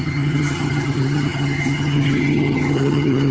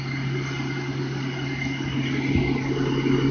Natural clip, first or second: second